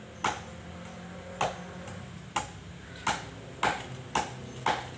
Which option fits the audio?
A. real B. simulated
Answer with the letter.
A